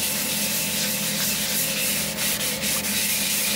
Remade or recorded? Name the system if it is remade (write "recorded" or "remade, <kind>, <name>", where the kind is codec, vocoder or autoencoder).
recorded